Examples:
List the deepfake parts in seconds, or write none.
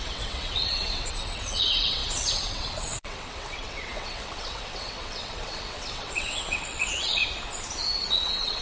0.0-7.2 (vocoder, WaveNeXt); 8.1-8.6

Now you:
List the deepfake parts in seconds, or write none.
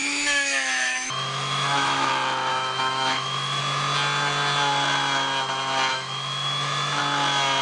0.0-2.1 (autoencoder, DAC-VAE); 2.5-3.6; 5.9-7.0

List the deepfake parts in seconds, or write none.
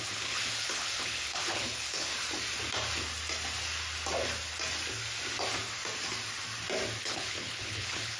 0.0-2.1 (codec, HILCodec); 7.0-8.2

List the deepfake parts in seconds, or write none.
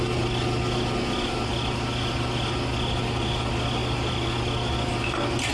none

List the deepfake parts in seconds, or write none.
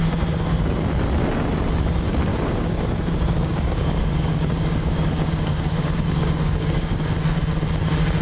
2.3-7.0 (codec, DAC)